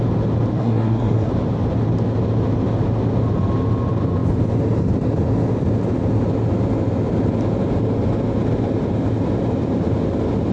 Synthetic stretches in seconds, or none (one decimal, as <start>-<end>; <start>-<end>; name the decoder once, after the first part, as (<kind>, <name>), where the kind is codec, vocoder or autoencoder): 0.5-1.3 (codec, SNAC)